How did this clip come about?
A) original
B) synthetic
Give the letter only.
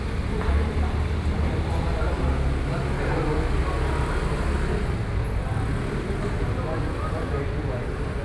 A